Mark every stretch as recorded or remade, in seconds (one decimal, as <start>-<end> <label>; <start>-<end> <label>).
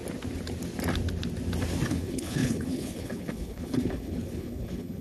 0.0-1.9 recorded; 1.9-5.0 remade